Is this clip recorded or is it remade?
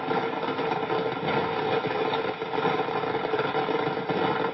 recorded